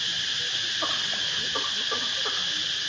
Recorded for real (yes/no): yes